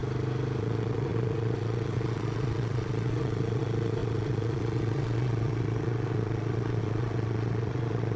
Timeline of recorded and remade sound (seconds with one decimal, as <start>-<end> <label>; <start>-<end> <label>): 0.0-0.6 recorded; 0.6-8.2 remade